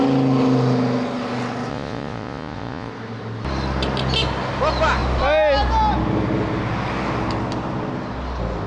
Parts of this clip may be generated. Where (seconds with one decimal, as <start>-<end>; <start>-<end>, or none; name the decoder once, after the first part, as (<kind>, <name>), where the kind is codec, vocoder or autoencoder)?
1.7-2.9 (vocoder, Vocos)